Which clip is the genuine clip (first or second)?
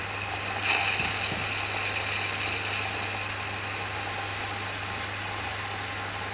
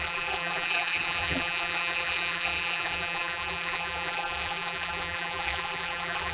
first